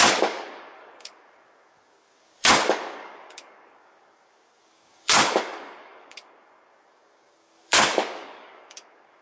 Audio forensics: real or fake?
fake